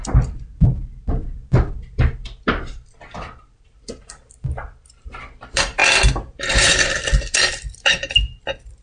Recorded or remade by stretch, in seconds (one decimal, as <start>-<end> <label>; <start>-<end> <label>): 0.0-5.8 remade; 5.8-6.5 recorded; 6.5-8.8 remade